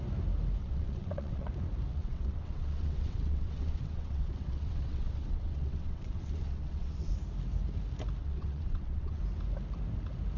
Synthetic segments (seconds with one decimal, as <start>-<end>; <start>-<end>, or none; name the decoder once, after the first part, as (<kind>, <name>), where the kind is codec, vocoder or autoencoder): 0.6-1.5 (vocoder, WaveNeXt); 1.9-7.1; 8.2-9.2

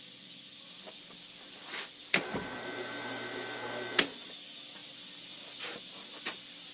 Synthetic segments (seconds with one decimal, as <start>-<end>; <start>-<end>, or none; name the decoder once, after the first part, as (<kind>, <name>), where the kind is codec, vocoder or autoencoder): none

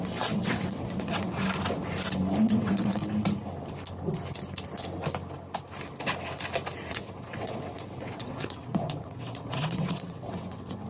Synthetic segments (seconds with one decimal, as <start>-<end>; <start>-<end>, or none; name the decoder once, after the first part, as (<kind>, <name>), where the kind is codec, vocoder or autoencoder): 0.0-1.4 (vocoder, WaveNeXt); 2.4-3.0; 6.9-10.9

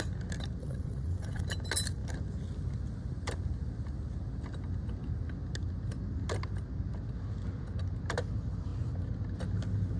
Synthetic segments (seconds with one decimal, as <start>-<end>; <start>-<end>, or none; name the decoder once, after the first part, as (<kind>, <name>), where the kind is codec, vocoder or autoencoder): 0.6-1.4 (vocoder, WaveNeXt)

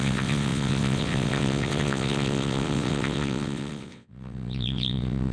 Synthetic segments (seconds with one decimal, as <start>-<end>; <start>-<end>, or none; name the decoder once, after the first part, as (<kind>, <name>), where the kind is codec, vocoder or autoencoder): 0.0-5.3 (vocoder, WaveNeXt)

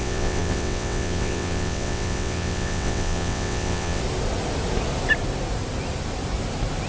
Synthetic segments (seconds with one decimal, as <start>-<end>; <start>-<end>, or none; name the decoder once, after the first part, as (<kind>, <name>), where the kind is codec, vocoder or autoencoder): 0.0-4.0 (vocoder, WaveNeXt)

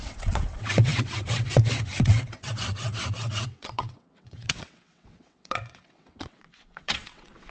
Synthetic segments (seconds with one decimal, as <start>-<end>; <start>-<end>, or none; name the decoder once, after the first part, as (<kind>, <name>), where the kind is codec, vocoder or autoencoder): 0.0-7.5 (vocoder, WaveNeXt)

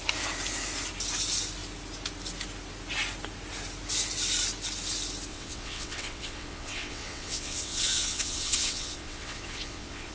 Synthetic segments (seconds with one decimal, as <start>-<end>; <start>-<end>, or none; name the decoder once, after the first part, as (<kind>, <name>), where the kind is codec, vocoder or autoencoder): 5.3-10.1 (vocoder, WaveNeXt)